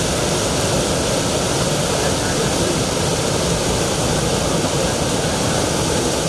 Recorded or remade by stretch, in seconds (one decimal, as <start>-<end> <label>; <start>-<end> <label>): 0.0-6.3 recorded